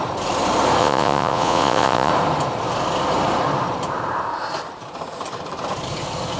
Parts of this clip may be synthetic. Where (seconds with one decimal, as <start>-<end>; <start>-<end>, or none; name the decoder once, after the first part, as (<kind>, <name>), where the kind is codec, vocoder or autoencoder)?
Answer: 0.8-2.1 (vocoder, Vocos)